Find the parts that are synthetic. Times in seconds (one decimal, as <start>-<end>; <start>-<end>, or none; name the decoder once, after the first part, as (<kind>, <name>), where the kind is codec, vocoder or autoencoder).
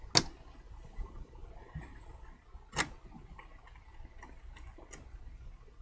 none